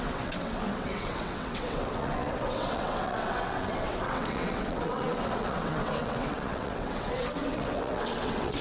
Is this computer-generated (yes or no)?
yes